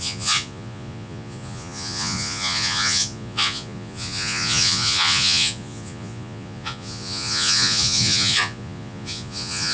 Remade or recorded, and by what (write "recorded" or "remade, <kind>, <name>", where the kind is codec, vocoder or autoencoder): remade, vocoder, Vocos